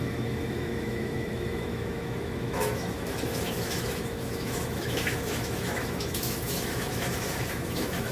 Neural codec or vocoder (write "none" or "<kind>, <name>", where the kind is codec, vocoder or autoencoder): autoencoder, DAC-VAE